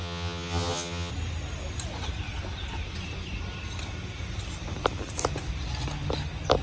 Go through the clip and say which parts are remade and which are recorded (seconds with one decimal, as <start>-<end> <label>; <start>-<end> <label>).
0.0-1.1 remade; 1.1-6.6 recorded